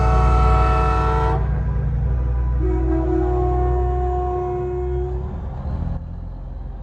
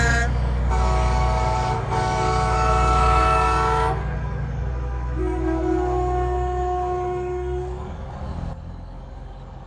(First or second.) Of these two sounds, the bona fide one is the first